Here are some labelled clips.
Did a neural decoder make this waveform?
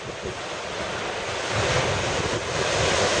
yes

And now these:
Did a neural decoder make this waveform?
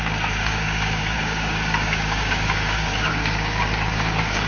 yes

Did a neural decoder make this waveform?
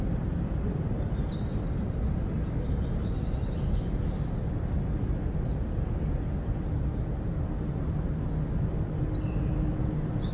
no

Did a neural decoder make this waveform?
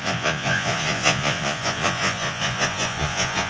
yes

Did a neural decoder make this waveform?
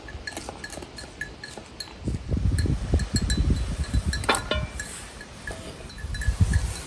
no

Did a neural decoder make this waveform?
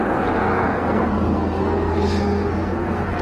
yes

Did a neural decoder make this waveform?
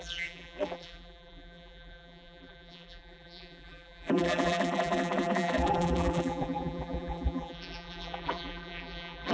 yes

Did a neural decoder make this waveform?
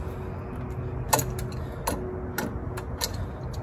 no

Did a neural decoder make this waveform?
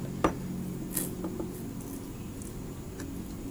no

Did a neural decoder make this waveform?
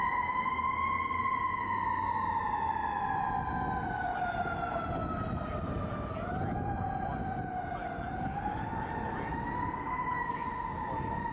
no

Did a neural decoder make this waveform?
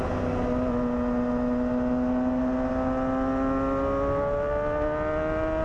no